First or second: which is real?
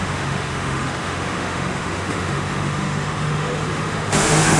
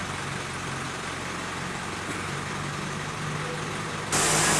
second